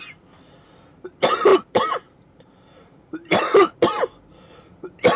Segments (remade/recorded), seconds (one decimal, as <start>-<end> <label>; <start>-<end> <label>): 0.0-1.5 recorded; 1.5-3.5 remade; 3.5-5.2 recorded